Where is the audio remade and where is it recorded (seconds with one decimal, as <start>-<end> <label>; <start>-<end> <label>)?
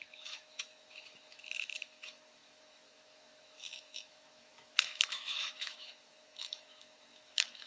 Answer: 0.0-7.7 remade